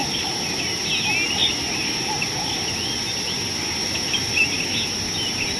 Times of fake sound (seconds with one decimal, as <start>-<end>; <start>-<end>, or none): 3.8-4.4